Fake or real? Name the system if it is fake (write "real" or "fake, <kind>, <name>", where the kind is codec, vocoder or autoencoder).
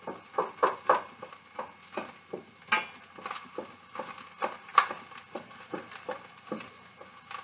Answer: real